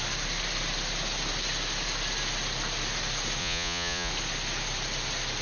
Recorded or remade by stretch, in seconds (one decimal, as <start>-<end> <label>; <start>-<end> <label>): 0.0-3.4 recorded; 3.4-4.1 remade; 4.1-5.4 recorded